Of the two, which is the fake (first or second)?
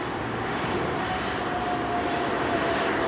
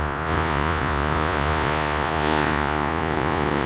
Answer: second